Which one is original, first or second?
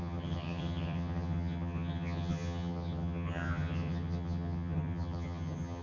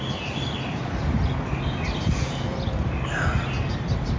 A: second